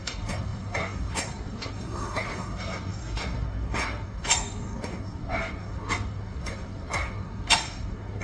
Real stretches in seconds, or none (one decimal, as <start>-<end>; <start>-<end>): none